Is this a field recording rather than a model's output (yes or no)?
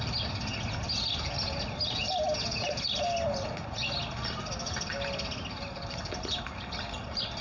yes